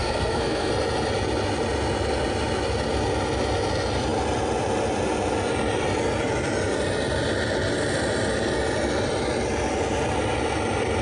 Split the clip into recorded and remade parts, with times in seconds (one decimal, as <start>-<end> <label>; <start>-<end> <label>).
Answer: 0.0-0.7 remade; 0.7-11.0 recorded